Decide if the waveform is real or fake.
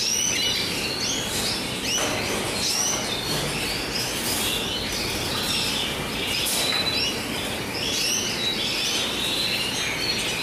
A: real